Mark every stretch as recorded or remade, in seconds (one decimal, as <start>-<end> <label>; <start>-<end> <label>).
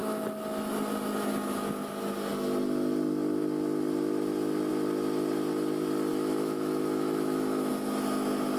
0.0-6.1 recorded; 6.1-7.7 remade; 7.7-8.6 recorded